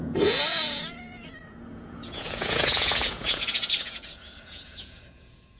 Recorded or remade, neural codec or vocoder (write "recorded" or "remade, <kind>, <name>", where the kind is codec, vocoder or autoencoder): remade, vocoder, Vocos